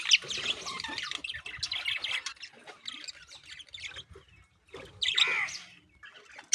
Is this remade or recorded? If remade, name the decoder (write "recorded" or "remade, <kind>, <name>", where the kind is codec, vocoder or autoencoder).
recorded